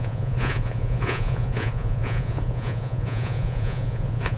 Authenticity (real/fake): fake